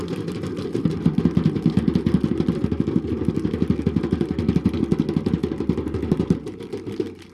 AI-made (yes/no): no